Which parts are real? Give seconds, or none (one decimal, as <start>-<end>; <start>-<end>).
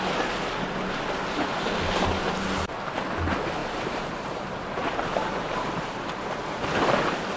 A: 0.0-3.6; 5.7-7.4